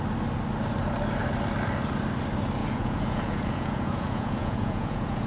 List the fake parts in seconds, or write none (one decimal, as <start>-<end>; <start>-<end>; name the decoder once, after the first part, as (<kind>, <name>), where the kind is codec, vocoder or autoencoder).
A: 2.6-5.3 (vocoder, Vocos)